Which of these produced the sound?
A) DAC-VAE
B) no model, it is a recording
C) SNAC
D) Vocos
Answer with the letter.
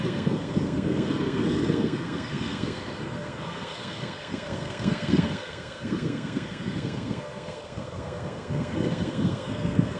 C